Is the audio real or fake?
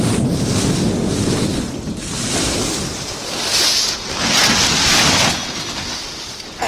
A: real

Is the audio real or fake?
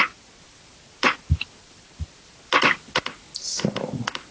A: real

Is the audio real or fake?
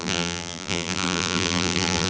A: fake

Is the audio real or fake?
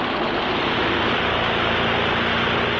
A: real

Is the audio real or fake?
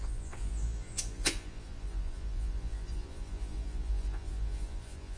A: fake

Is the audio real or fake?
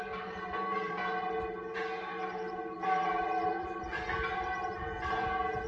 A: fake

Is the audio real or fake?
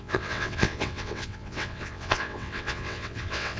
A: fake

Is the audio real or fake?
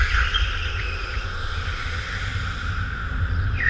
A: fake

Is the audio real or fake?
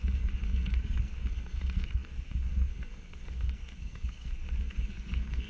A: fake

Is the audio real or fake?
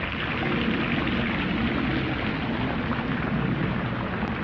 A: real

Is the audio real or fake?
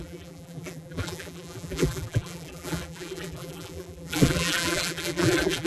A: fake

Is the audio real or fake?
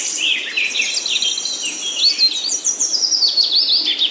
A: real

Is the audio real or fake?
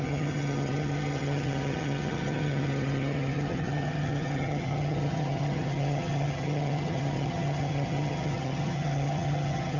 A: fake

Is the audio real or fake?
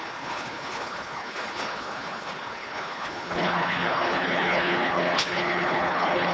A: fake